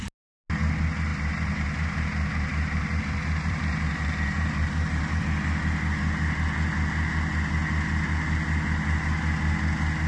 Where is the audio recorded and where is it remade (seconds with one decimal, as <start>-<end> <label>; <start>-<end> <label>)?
0.0-1.1 recorded; 1.1-5.2 remade; 5.2-10.1 recorded